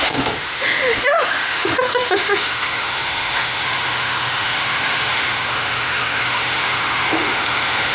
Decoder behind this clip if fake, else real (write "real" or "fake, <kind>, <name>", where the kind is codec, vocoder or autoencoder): fake, autoencoder, DAC-VAE